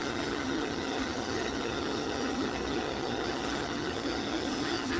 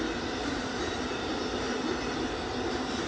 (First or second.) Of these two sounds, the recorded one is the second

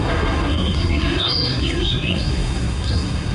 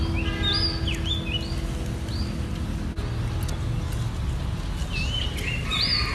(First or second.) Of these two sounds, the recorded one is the second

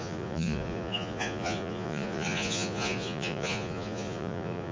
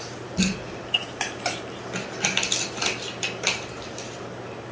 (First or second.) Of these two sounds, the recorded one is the second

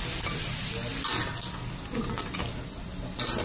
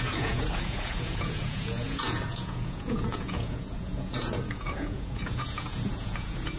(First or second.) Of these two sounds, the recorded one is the first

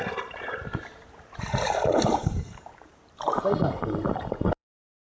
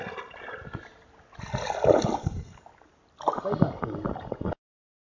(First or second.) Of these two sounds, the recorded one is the second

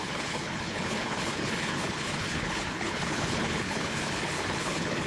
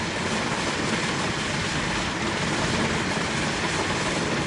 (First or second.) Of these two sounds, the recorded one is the second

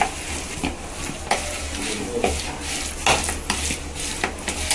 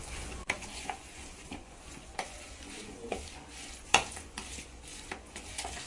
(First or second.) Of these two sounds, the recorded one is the first